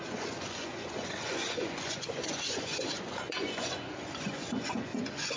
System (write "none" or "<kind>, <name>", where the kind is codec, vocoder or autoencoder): vocoder, Vocos